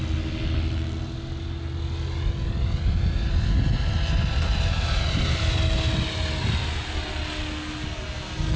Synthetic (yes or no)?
no